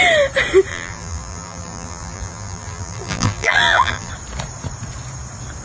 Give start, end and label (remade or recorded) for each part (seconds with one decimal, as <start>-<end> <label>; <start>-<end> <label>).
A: 0.0-0.7 recorded; 0.7-4.1 remade; 4.1-5.6 recorded